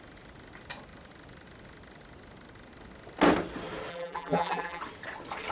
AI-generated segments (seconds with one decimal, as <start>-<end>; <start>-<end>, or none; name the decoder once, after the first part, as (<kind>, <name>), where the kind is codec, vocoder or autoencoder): 3.9-4.8 (vocoder, BigVGAN v2)